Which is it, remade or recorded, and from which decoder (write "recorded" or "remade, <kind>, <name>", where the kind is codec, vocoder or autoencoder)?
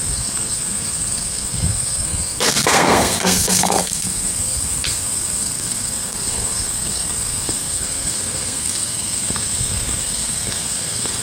remade, codec, SNAC